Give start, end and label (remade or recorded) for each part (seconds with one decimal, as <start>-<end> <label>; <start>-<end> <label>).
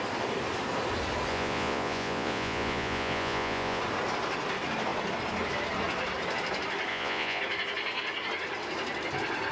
0.0-1.3 recorded; 1.3-3.8 remade; 3.8-6.9 recorded; 6.9-7.4 remade; 7.4-9.5 recorded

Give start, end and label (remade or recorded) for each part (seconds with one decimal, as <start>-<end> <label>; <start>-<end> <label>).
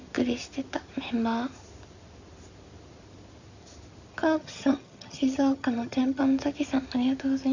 0.0-4.2 recorded; 4.2-6.2 remade; 6.2-7.5 recorded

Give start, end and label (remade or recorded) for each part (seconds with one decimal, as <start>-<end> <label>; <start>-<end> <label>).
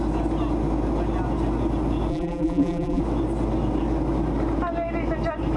0.0-2.1 recorded; 2.1-3.0 remade; 3.0-5.6 recorded